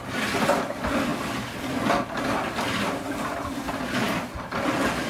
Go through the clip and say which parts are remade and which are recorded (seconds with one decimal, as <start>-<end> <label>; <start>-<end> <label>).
0.0-5.1 recorded